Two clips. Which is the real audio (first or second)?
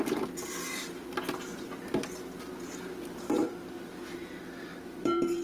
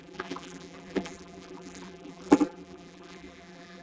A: first